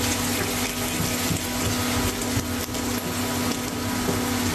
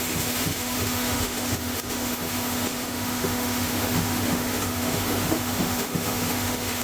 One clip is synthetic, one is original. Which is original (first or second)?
first